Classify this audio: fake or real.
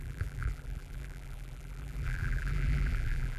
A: fake